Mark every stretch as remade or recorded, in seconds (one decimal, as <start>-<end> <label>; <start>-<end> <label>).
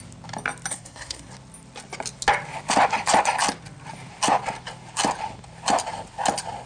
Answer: 0.0-0.7 recorded; 0.7-1.3 remade; 1.3-6.7 recorded